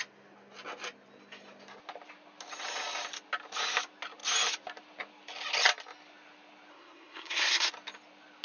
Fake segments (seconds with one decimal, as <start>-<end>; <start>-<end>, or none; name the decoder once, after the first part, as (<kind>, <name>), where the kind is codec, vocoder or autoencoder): 6.7-7.7 (codec, SNAC)

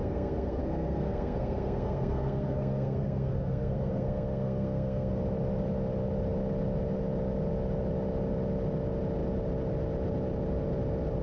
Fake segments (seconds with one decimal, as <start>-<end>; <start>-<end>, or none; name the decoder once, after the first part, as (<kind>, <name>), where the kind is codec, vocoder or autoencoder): 0.0-5.1 (codec, SNAC)

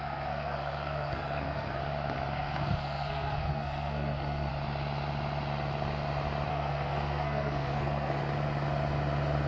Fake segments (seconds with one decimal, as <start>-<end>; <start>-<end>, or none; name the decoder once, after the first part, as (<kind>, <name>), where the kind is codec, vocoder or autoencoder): 0.0-1.8 (codec, SNAC); 2.3-4.5; 6.5-8.2

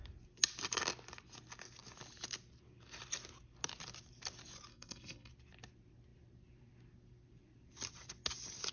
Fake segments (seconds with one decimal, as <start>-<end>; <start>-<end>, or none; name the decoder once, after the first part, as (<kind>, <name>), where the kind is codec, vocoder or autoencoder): 4.7-5.3 (codec, SNAC)

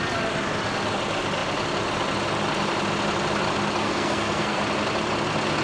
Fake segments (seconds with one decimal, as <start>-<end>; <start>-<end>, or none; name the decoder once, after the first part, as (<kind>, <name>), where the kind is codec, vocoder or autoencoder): 3.8-4.6 (codec, SNAC)